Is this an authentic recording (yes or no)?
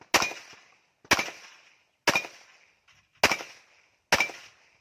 yes